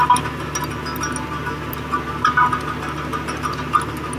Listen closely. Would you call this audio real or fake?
real